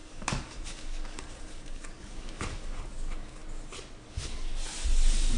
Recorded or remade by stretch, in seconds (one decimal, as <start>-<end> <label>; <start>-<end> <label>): 0.0-3.4 remade; 3.4-4.0 recorded; 4.0-4.5 remade; 4.5-5.4 recorded